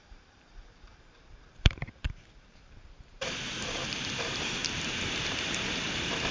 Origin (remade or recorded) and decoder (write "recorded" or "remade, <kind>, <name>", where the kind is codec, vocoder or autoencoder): remade, vocoder, BigVGAN v2